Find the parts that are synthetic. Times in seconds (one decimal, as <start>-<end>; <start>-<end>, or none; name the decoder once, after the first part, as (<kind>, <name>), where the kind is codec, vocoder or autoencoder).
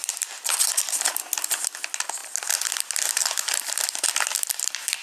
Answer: 0.0-1.3 (vocoder, BigVGAN v2)